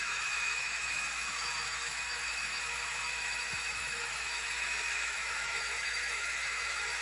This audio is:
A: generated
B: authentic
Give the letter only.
A